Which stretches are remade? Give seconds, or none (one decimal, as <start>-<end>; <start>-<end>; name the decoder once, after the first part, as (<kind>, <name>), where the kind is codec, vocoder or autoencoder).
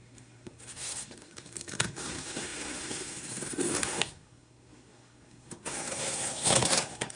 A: 0.0-7.2 (codec, SNAC)